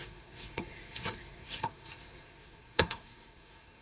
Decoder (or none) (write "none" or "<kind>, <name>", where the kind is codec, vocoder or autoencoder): codec, SNAC